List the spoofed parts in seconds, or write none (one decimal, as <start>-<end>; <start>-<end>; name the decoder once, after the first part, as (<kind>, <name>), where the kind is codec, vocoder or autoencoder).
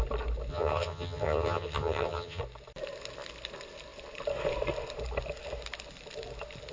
0.5-2.4 (vocoder, HiFi-GAN)